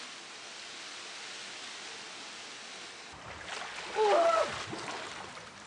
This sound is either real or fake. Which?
real